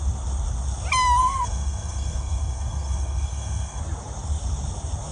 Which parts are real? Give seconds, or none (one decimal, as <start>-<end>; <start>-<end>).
0.0-1.2; 3.8-5.1